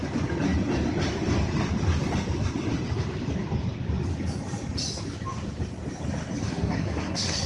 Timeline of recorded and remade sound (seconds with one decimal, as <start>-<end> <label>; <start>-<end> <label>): 0.0-6.4 recorded; 6.4-7.5 remade